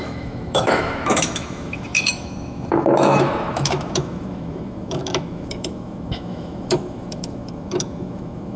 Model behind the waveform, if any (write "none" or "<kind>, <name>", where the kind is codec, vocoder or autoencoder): autoencoder, DAC-VAE